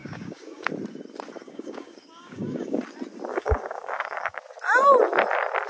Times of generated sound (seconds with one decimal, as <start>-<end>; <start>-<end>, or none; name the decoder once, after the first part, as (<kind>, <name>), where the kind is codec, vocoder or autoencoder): 0.0-0.7 (codec, DAC); 1.4-2.8; 3.3-4.4

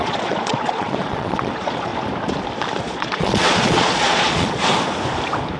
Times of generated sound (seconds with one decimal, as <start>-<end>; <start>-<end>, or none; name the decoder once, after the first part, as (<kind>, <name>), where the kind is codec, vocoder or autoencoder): 0.0-1.9 (vocoder, Vocos); 2.8-4.7

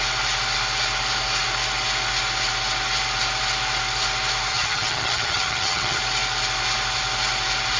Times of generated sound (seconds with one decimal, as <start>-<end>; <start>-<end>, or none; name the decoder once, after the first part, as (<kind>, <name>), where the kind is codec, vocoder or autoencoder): 4.5-6.0 (vocoder, HiFi-GAN)

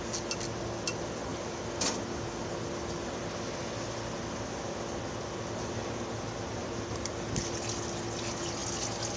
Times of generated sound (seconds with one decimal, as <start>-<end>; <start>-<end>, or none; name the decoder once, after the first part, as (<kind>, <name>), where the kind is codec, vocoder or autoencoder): none

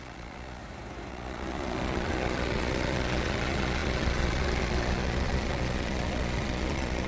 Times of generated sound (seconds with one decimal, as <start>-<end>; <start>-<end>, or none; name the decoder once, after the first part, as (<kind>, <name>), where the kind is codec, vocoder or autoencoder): 0.0-0.6 (vocoder, Vocos); 1.1-7.1

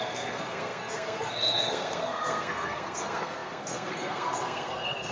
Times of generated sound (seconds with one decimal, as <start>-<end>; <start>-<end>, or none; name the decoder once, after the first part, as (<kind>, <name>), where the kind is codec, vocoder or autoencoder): 0.0-5.1 (codec, SNAC)

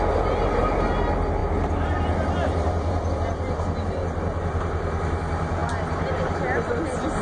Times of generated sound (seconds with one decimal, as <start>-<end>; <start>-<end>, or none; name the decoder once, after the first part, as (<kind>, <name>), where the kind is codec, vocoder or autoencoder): none

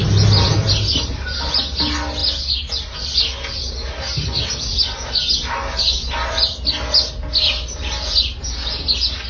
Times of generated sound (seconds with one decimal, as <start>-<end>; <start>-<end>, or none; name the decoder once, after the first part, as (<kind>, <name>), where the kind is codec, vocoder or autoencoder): none